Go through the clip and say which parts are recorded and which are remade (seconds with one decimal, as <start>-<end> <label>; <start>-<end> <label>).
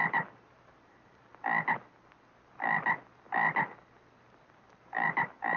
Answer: 0.0-1.3 remade; 1.3-4.3 recorded; 4.3-5.6 remade